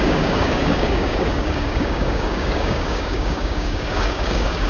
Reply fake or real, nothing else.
fake